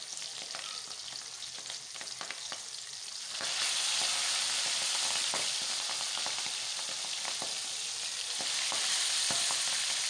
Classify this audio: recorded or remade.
recorded